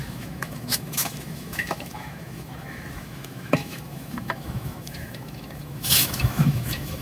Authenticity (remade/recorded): remade